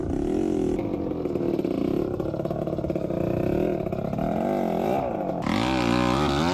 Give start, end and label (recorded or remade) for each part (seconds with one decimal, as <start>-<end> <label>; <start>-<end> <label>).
0.0-6.5 recorded